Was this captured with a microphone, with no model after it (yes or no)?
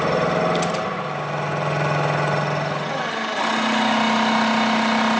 yes